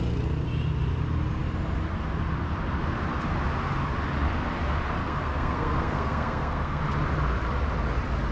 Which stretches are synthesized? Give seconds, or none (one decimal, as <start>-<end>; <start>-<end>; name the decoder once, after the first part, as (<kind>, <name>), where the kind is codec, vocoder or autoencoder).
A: 5.0-6.8 (codec, SNAC)